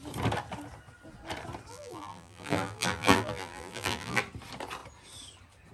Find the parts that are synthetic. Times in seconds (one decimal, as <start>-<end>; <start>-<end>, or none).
1.7-4.2